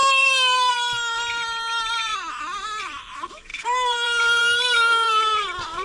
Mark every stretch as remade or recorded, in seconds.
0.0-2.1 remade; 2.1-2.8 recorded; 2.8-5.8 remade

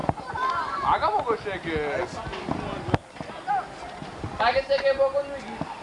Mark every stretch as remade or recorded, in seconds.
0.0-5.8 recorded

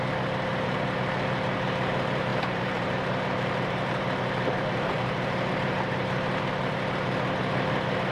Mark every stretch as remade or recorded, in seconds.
0.0-2.3 recorded; 2.3-5.5 remade; 5.5-8.1 recorded

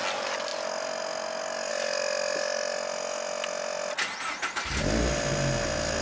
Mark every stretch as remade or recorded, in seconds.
0.0-6.0 recorded

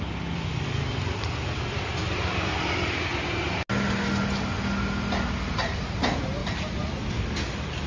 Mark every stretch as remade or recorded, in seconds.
0.0-6.4 recorded; 6.4-7.1 remade; 7.1-7.9 recorded